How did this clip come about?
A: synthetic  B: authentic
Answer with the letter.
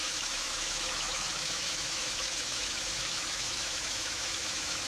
A